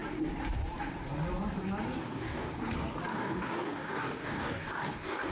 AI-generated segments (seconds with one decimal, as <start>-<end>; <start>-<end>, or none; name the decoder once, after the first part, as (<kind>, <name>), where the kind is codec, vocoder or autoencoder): 2.0-2.5 (codec, DAC); 3.1-5.3